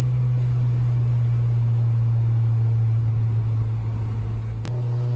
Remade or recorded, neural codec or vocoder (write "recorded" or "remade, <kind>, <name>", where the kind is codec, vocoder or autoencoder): recorded